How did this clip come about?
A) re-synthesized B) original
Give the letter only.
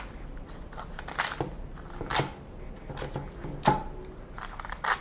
B